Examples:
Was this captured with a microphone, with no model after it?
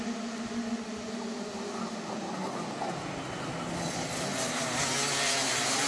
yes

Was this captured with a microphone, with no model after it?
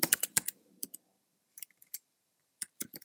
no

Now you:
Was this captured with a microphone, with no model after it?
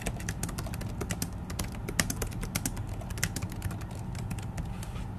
yes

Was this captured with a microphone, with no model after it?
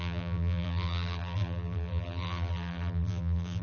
no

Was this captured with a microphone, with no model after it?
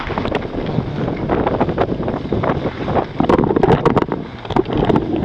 yes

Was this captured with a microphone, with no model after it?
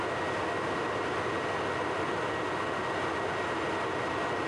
yes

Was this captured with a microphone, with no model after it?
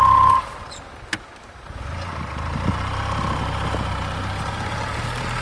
no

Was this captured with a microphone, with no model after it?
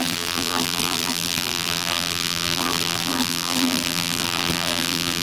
no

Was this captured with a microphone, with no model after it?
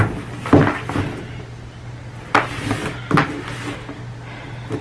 yes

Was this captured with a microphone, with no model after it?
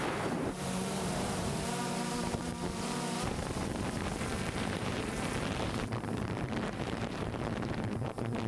no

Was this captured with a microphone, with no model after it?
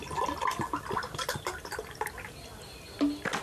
yes